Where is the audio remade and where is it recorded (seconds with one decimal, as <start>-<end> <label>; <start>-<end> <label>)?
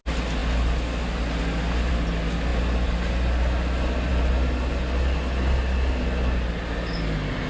0.0-7.5 recorded